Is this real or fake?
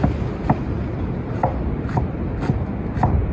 real